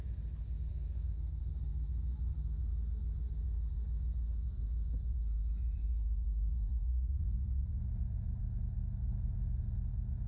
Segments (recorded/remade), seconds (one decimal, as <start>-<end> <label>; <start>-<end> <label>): 0.0-0.7 recorded; 0.7-1.4 remade; 1.4-5.9 recorded; 5.9-7.3 remade; 7.3-10.3 recorded